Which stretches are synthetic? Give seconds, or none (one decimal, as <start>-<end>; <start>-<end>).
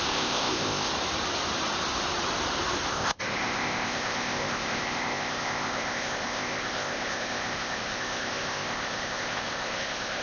0.0-0.9; 2.9-10.2